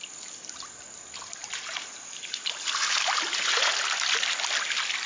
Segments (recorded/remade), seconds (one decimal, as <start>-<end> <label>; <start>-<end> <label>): 0.0-1.4 recorded; 1.4-3.7 remade; 3.7-5.1 recorded